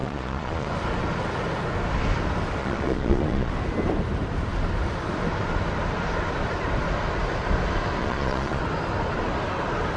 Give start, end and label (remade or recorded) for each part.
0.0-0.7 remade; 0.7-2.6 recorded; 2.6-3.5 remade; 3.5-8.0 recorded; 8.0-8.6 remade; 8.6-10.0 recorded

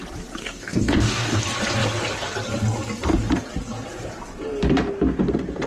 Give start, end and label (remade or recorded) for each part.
0.0-0.4 recorded; 0.4-1.4 remade; 1.4-5.7 recorded